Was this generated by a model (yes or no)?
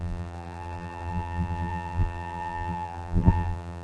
yes